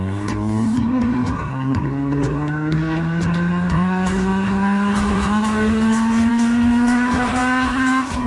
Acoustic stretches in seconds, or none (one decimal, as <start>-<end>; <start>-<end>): none